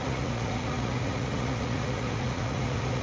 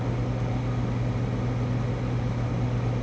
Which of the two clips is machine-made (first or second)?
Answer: first